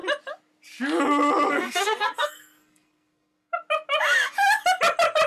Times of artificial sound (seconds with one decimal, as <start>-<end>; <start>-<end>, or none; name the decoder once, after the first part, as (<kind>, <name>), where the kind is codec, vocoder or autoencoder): 1.5-3.5 (codec, SNAC)